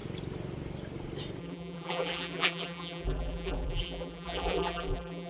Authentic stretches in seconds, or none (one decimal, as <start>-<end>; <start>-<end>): 0.0-1.4

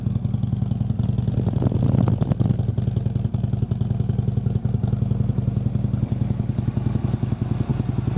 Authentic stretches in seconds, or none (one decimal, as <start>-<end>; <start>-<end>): 0.0-7.7